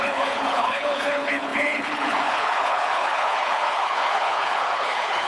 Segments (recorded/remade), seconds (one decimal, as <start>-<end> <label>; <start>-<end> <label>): 0.0-5.3 remade